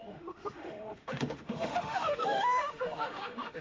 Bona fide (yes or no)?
no